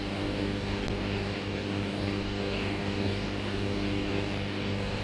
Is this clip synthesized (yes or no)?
yes